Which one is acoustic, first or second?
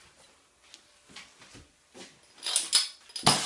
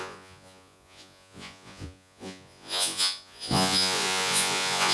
first